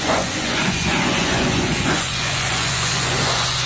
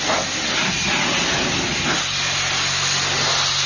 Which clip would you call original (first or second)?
second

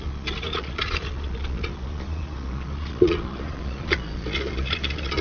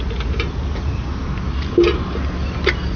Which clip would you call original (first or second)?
second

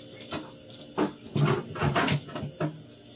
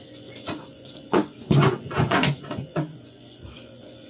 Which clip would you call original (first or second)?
first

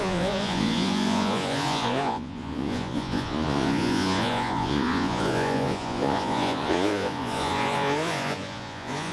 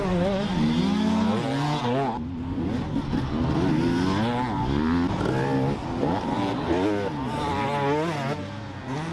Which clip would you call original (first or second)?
second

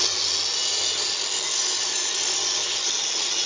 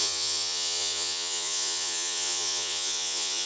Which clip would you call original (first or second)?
first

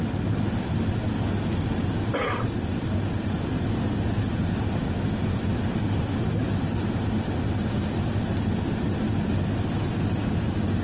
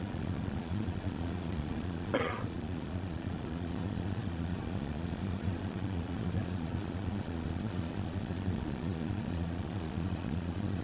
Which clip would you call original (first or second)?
first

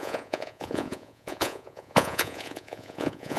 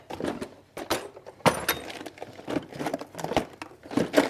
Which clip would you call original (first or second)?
second